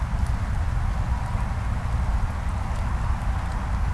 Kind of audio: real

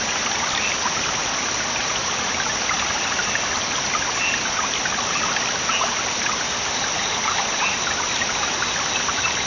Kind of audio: real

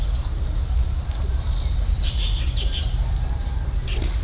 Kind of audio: real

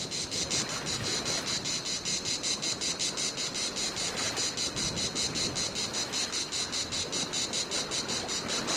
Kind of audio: real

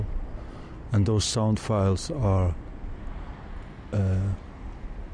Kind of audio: real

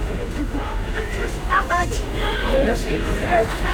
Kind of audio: fake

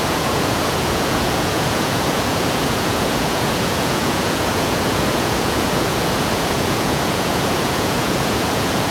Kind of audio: fake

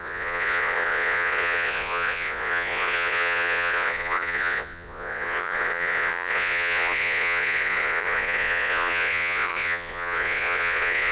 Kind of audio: fake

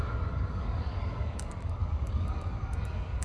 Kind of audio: fake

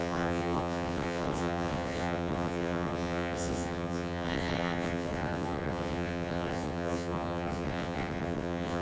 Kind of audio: fake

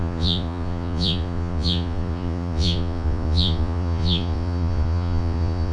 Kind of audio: fake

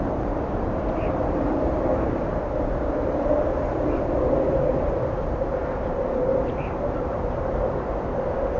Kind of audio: fake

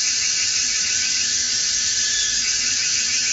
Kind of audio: fake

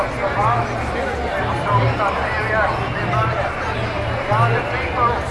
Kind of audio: real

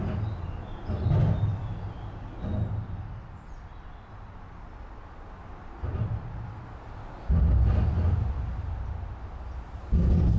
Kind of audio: real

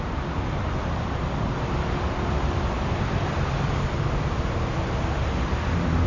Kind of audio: real